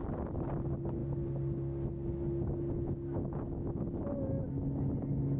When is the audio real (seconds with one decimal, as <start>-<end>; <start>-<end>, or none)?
0.0-5.4